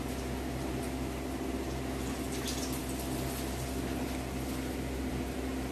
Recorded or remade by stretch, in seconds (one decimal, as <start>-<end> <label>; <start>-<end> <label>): 0.0-5.7 recorded

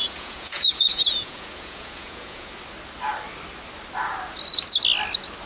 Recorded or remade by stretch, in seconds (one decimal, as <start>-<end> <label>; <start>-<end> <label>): 0.0-2.5 remade; 2.5-5.5 recorded

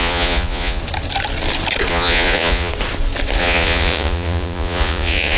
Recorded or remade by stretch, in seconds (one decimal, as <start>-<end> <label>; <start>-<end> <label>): 0.0-0.8 remade; 0.8-1.9 recorded; 1.9-2.7 remade; 2.7-3.4 recorded; 3.4-5.4 remade